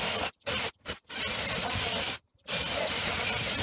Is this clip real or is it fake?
real